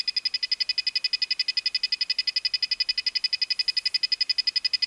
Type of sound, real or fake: real